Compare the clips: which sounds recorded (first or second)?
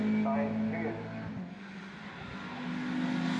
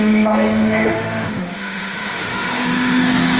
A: first